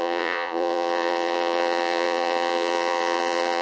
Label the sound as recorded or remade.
remade